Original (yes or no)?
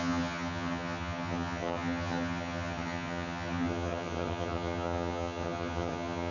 no